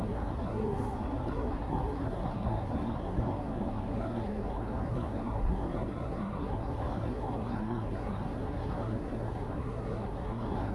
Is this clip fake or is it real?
fake